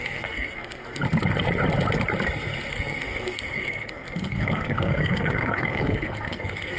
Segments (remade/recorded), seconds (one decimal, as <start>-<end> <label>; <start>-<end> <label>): 0.0-1.0 remade; 1.0-2.7 recorded; 2.7-6.8 remade